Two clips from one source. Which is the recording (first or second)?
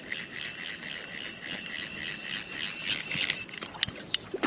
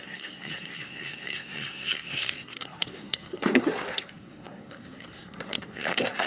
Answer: first